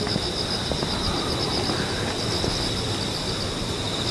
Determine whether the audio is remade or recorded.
recorded